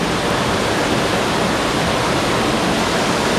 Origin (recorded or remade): recorded